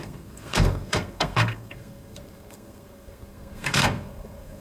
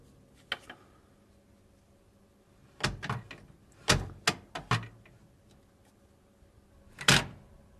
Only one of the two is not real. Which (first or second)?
first